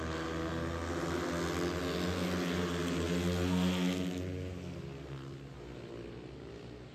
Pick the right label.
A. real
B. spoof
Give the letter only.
A